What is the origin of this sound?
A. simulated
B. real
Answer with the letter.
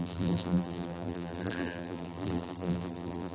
A